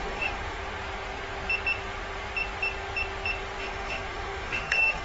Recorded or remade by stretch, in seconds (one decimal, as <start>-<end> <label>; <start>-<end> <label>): 0.0-0.6 remade; 0.6-3.6 recorded; 3.6-5.0 remade